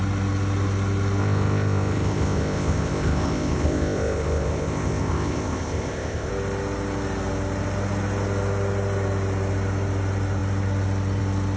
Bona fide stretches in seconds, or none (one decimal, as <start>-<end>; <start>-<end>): 0.0-1.2; 6.3-11.6